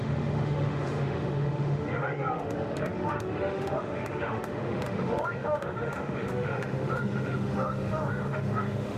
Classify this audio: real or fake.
fake